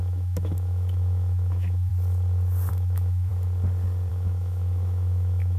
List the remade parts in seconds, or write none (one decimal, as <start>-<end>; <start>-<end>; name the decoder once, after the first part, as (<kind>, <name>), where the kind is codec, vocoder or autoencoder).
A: 0.0-1.9 (autoencoder, DAC-VAE); 2.7-3.3; 4.1-5.6